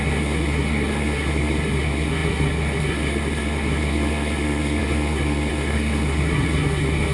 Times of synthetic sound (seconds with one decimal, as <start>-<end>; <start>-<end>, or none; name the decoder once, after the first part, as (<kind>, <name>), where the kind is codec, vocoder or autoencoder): 0.0-7.1 (codec, SNAC)

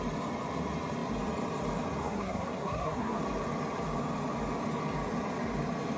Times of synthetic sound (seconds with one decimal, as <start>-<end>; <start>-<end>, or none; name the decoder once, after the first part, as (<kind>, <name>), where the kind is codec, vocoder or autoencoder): 2.0-3.2 (codec, SNAC)

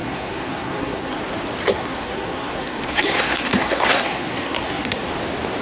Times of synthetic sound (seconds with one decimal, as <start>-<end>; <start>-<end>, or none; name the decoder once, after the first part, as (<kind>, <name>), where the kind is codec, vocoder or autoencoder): 0.0-1.2 (codec, SNAC); 1.7-5.1

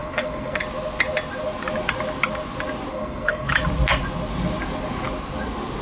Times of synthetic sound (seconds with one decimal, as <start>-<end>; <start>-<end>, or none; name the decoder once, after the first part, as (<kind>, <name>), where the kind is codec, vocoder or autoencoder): 0.0-0.6 (codec, SNAC); 2.9-3.5

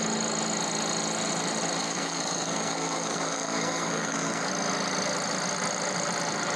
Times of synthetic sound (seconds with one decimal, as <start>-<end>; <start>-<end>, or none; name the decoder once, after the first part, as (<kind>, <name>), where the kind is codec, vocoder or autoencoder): 1.8-4.5 (codec, SNAC)

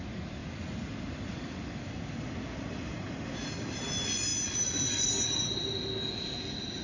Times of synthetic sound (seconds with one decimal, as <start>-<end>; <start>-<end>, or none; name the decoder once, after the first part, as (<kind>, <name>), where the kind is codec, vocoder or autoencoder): none

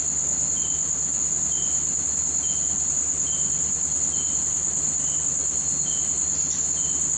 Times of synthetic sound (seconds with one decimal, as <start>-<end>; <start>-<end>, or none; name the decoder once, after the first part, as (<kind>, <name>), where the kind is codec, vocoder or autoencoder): none